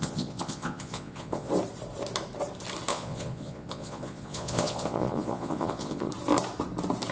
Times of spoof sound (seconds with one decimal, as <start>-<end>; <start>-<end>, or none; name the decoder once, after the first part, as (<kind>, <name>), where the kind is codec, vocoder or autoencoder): 0.0-1.5 (vocoder, Vocos); 2.9-6.1